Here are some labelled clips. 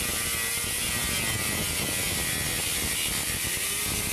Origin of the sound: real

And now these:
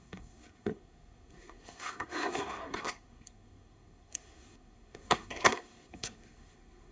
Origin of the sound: fake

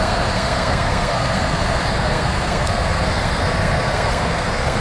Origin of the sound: fake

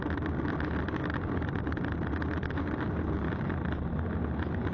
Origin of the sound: real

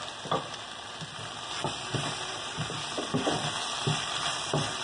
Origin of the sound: fake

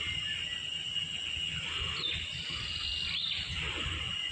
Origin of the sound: real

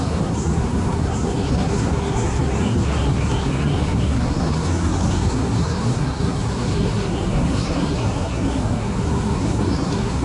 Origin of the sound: fake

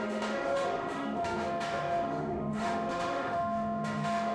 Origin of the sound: fake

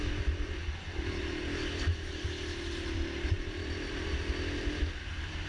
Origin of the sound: real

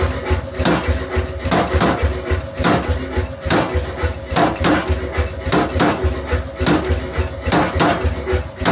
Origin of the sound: real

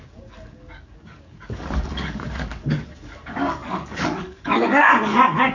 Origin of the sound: fake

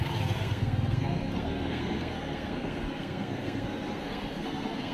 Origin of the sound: fake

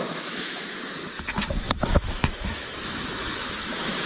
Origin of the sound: fake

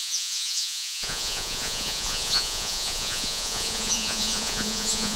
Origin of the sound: fake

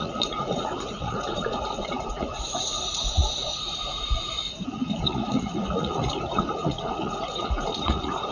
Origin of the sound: fake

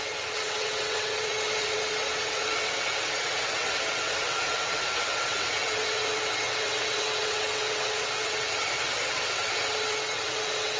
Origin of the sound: fake